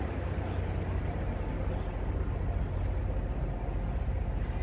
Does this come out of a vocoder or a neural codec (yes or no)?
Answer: no